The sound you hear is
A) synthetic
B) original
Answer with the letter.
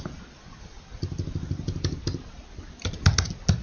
B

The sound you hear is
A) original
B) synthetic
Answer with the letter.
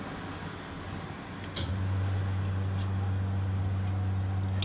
A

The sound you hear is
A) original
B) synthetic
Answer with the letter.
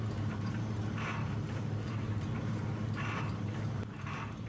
B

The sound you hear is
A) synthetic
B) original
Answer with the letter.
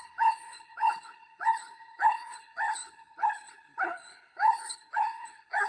A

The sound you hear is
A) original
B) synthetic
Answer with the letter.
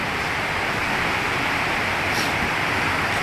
B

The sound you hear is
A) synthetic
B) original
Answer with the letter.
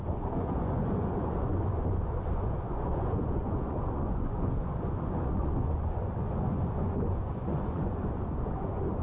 A